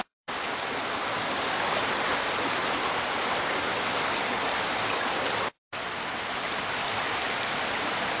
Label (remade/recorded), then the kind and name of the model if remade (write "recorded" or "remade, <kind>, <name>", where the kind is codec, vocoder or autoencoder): recorded